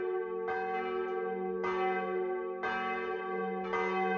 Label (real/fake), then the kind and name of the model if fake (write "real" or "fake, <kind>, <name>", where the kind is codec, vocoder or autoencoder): real